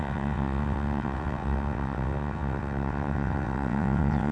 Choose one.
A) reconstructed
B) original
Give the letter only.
A